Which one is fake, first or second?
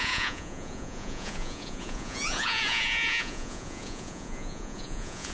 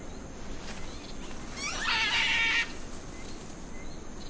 first